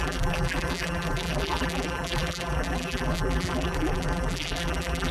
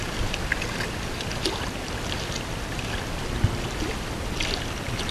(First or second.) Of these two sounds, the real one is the second